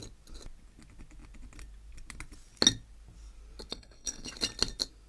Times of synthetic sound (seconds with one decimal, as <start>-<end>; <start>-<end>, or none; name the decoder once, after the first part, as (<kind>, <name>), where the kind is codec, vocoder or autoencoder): 3.7-4.3 (codec, SNAC)